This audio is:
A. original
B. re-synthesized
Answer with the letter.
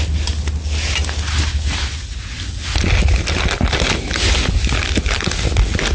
A